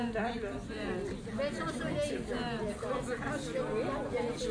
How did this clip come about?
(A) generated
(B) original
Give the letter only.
B